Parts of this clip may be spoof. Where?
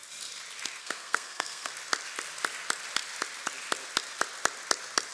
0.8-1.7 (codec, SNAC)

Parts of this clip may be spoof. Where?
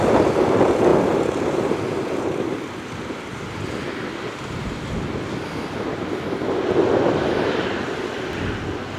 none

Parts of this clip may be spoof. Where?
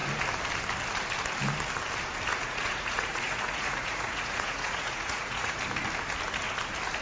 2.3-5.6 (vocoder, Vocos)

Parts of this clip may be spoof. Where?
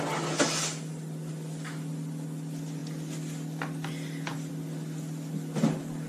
none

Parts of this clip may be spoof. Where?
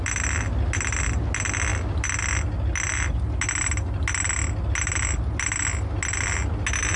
none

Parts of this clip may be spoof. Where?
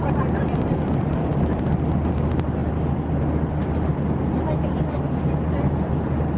none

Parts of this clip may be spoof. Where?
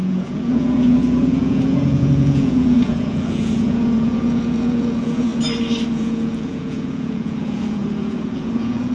0.0-5.3 (vocoder, Vocos); 5.9-8.9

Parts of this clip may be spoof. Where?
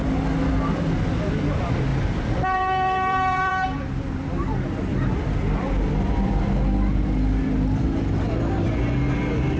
1.9-4.0 (vocoder, BigVGAN v2); 4.9-6.3